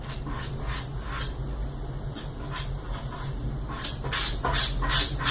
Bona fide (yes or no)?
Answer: yes